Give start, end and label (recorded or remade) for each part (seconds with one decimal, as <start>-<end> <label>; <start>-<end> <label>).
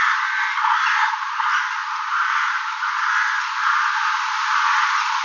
0.0-5.2 recorded